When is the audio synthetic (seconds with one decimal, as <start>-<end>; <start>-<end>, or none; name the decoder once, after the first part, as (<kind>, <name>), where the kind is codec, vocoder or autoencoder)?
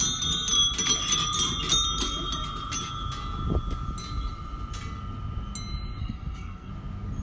6.0-6.7 (codec, SNAC)